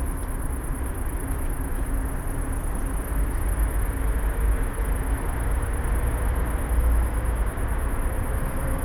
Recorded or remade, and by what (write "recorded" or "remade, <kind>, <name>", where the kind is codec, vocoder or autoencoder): recorded